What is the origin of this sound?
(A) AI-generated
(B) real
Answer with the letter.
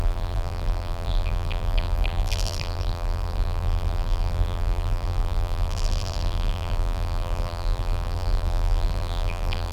A